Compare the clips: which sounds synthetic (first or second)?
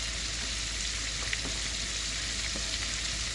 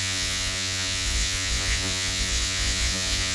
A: second